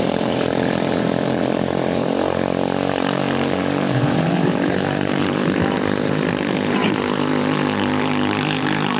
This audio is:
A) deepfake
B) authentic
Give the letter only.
A